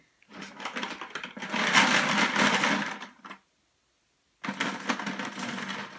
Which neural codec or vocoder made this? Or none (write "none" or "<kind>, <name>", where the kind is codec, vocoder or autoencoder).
none